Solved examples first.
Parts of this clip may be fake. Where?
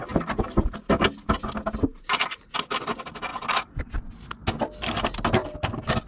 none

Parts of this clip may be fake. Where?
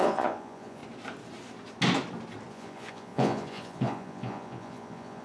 0.0-0.8; 2.5-5.2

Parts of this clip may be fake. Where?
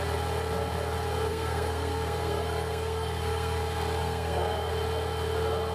1.3-4.7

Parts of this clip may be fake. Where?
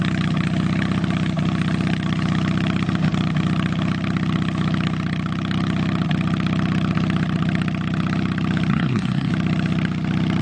8.7-9.3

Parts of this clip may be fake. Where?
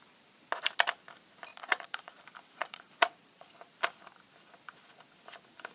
1.5-2.1; 2.6-3.5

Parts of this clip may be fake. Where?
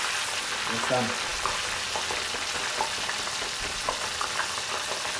none